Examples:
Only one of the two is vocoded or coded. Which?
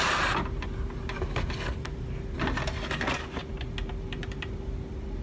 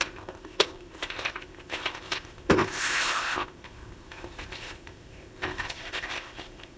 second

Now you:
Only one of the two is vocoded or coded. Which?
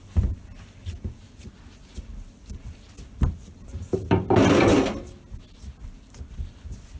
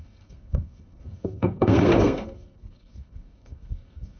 second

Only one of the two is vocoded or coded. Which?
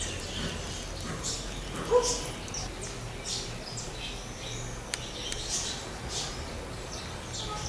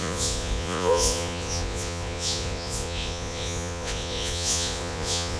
second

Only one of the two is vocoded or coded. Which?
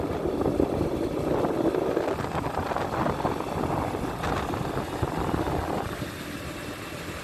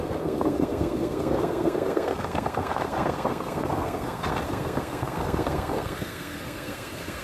second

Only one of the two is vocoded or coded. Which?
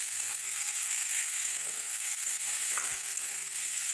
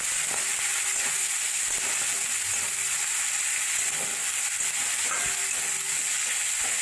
first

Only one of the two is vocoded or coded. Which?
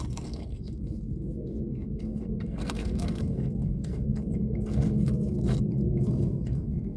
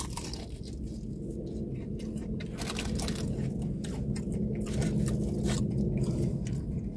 first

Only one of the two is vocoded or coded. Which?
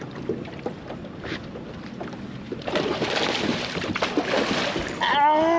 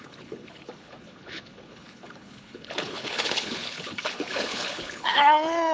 second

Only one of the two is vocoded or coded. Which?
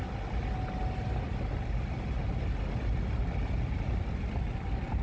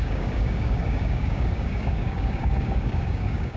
second